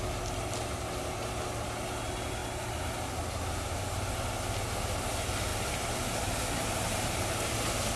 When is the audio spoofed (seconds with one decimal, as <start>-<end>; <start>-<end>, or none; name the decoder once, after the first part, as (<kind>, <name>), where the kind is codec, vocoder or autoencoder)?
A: none